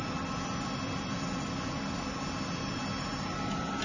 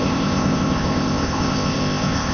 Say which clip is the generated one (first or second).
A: second